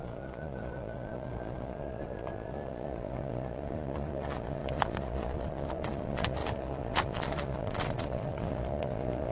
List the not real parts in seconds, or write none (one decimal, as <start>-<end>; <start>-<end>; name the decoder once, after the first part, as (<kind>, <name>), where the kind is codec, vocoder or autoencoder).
0.0-9.3 (vocoder, Vocos)